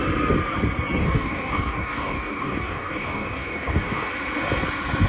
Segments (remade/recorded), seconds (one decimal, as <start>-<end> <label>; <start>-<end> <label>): 0.0-1.0 recorded; 1.0-4.1 remade; 4.1-5.1 recorded